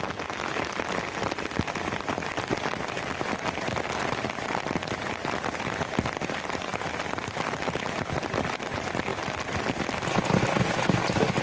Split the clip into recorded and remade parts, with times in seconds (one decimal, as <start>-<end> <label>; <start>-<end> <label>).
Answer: 0.0-11.4 recorded